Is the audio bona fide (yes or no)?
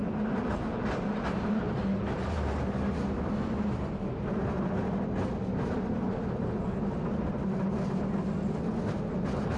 yes